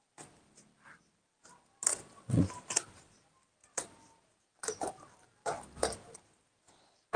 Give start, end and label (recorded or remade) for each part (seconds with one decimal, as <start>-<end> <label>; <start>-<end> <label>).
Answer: 0.0-1.9 recorded; 1.9-2.4 remade; 2.4-7.2 recorded